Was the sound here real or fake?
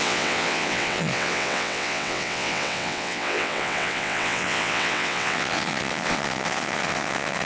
fake